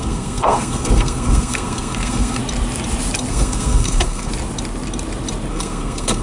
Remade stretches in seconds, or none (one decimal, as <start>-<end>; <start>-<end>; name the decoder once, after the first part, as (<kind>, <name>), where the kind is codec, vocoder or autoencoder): 0.0-2.4 (codec, SNAC); 3.3-4.3; 5.5-6.2